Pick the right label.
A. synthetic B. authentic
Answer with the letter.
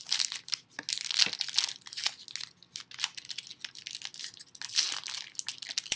B